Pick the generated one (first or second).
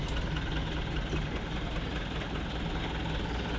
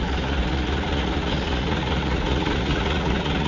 second